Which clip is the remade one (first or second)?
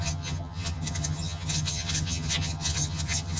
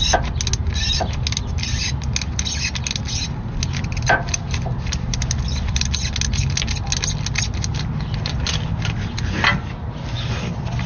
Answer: first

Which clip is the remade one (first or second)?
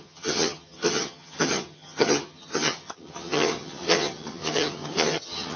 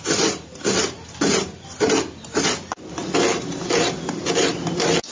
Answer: first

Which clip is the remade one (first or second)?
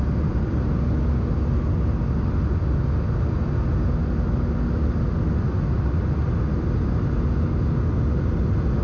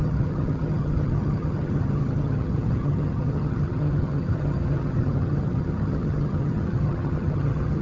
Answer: second